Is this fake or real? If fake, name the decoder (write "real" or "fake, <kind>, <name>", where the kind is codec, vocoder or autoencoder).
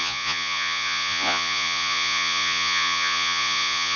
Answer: fake, vocoder, Vocos